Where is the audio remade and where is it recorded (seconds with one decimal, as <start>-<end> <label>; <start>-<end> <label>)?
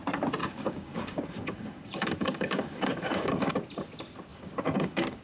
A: 0.0-0.4 recorded; 0.4-3.5 remade; 3.5-4.3 recorded; 4.3-5.2 remade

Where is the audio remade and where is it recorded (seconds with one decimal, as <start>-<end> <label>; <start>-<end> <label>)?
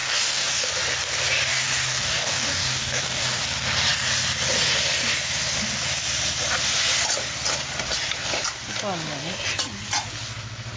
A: 0.0-0.7 remade; 0.7-1.5 recorded; 1.5-3.4 remade; 3.4-10.8 recorded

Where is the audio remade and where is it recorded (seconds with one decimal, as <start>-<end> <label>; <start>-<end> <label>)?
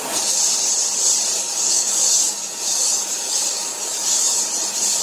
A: 0.0-1.4 recorded; 1.4-4.4 remade; 4.4-5.0 recorded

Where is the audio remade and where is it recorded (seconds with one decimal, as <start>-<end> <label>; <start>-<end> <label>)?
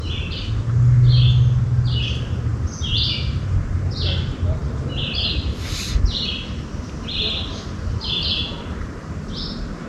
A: 0.0-9.9 recorded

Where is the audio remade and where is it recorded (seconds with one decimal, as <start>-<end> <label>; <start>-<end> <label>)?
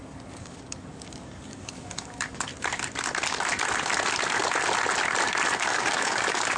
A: 0.0-2.5 remade; 2.5-5.6 recorded; 5.6-6.6 remade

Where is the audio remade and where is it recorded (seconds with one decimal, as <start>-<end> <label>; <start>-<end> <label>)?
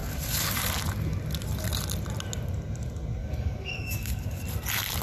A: 0.0-3.2 recorded; 3.2-4.4 remade; 4.4-5.0 recorded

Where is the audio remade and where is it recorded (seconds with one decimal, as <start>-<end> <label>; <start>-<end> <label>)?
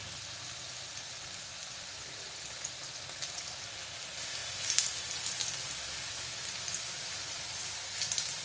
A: 0.0-8.4 recorded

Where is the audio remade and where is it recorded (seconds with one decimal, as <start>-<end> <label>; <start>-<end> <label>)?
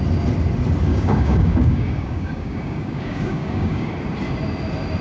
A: 0.0-0.9 recorded; 0.9-3.9 remade; 3.9-5.0 recorded